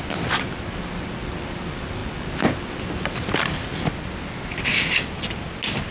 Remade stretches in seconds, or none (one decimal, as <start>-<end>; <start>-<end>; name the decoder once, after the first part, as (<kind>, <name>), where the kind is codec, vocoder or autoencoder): none